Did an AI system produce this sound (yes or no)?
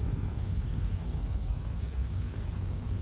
yes